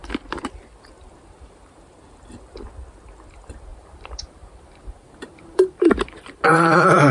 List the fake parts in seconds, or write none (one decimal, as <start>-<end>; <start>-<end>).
0.0-0.5; 3.7-7.1